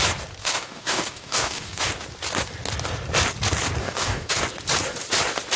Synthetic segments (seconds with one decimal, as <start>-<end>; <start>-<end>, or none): 0.4-1.9; 3.8-4.4